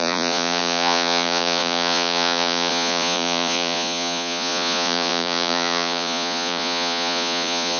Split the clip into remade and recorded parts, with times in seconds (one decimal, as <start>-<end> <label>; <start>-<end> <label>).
0.0-7.8 remade